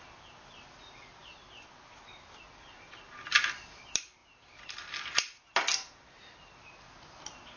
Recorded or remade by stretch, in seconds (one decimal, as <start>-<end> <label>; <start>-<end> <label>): 0.0-7.6 recorded